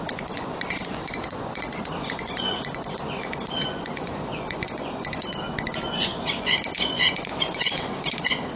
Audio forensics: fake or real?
fake